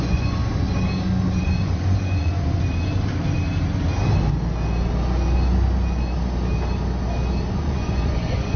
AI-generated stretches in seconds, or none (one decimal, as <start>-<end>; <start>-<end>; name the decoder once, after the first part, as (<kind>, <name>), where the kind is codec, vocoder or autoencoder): 0.0-0.4 (vocoder, Vocos); 1.4-2.3; 7.5-8.6